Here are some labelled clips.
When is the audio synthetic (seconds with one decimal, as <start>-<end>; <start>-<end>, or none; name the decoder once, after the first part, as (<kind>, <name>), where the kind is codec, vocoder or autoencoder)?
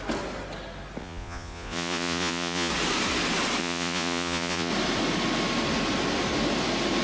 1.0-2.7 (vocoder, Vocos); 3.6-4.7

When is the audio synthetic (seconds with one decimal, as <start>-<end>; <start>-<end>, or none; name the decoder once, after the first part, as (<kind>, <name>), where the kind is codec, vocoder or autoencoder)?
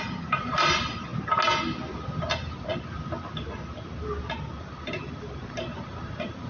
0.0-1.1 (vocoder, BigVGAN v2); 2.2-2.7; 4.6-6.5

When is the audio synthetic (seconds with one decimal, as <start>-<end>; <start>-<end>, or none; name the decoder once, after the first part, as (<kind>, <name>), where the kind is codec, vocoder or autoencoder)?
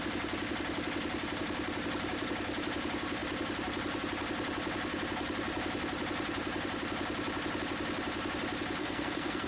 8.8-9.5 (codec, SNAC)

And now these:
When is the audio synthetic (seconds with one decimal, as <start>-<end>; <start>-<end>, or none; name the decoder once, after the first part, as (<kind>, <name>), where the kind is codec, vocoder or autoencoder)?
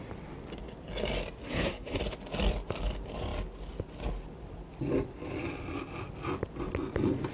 1.4-2.0 (codec, SNAC)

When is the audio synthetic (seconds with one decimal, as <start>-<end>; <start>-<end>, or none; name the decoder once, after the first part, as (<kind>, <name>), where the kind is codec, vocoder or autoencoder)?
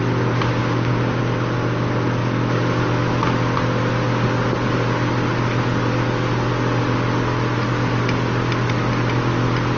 0.6-1.2 (codec, DAC)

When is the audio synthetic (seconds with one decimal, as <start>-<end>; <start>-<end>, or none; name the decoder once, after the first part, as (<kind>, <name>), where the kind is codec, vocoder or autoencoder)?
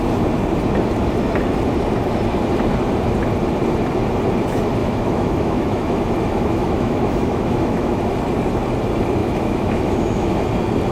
4.8-8.0 (autoencoder, DAC-VAE); 9.2-10.4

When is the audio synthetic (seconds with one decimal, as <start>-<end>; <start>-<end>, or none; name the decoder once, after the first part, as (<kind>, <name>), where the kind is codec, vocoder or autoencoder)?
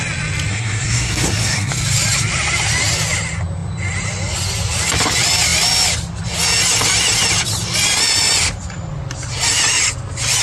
0.5-1.7 (codec, SNAC)